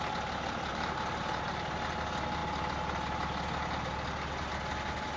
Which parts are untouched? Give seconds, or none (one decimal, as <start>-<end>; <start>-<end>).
0.0-0.7; 1.9-5.2